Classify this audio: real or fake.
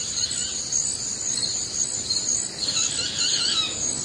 real